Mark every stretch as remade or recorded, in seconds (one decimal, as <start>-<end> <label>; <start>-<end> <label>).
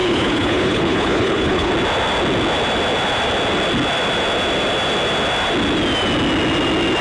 0.0-1.7 remade; 1.7-7.0 recorded